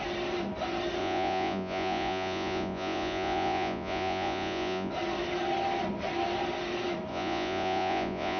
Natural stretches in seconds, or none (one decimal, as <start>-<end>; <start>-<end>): 0.0-1.0; 4.9-7.1